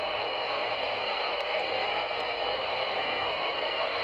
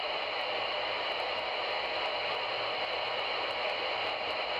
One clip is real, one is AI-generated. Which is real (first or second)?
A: second